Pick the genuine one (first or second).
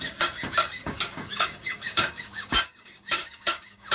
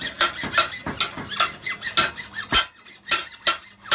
second